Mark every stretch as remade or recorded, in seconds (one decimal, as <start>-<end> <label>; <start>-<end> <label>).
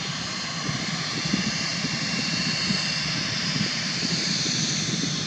0.0-5.3 recorded